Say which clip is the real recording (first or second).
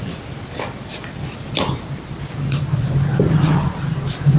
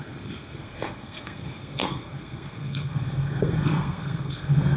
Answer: first